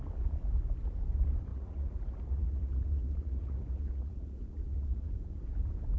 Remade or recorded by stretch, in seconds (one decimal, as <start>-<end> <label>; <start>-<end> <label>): 0.0-1.5 recorded; 1.5-5.1 remade; 5.1-6.0 recorded

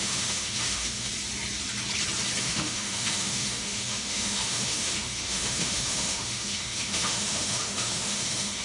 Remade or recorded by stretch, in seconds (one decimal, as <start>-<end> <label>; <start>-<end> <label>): 0.0-1.1 remade; 1.1-2.4 recorded; 2.4-8.6 remade

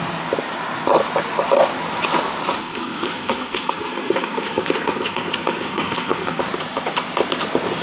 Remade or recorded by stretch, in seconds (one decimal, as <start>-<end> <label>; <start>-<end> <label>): 0.0-2.6 recorded; 2.6-6.4 remade; 6.4-7.8 recorded

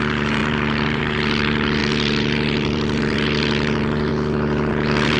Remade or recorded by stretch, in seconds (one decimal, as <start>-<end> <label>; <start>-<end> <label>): 0.0-4.1 remade; 4.1-4.7 recorded; 4.7-5.2 remade

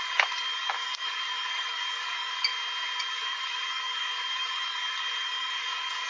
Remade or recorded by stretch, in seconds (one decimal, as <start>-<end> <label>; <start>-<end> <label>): 0.0-2.5 remade; 2.5-3.1 recorded; 3.1-6.1 remade

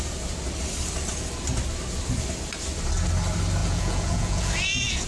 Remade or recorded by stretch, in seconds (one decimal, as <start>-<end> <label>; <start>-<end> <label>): 0.0-3.6 recorded; 3.6-5.1 remade

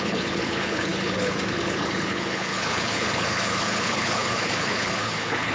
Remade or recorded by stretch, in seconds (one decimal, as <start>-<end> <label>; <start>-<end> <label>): 0.0-5.5 remade

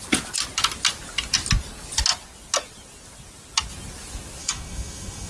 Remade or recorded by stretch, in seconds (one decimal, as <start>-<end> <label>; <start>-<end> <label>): 0.0-4.4 recorded; 4.4-5.3 remade